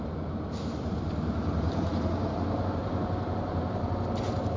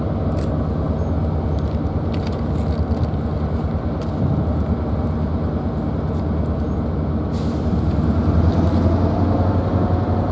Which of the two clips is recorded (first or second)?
second